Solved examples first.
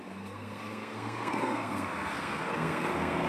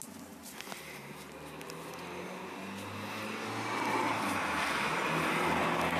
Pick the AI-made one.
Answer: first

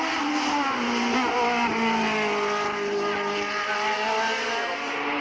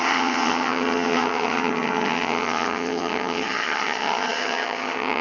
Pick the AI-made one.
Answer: second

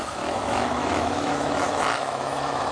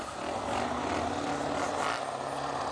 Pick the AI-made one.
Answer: first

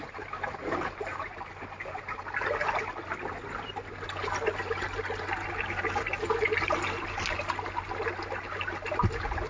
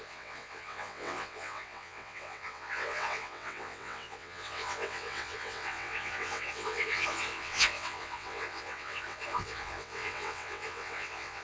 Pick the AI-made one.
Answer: second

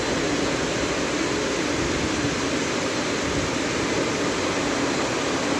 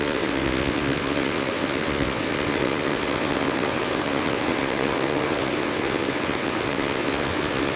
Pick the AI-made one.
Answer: second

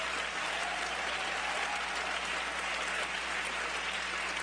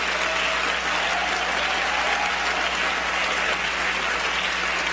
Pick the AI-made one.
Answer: first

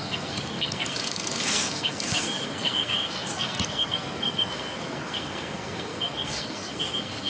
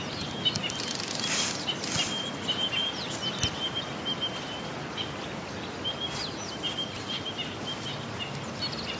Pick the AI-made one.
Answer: first